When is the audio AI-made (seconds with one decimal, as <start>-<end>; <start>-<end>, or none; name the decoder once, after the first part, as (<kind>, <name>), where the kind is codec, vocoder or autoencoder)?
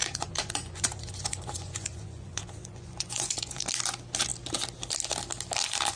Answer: 0.0-3.6 (vocoder, Vocos)